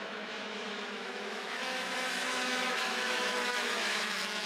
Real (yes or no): no